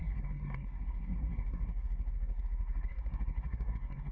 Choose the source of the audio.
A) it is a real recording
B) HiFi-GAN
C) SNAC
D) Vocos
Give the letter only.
C